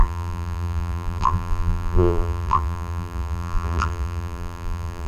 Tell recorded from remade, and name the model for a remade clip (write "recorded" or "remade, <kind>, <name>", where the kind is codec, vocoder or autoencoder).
remade, vocoder, BigVGAN v2